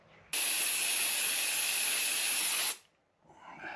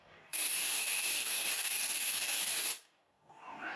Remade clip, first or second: second